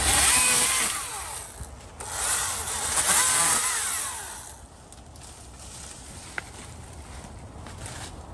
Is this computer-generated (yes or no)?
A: no